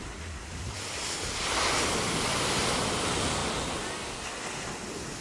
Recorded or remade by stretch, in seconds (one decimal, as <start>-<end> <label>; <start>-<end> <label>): 0.0-5.2 recorded